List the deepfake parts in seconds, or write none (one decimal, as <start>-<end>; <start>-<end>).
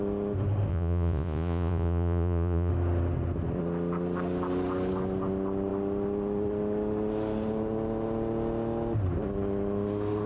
0.7-2.7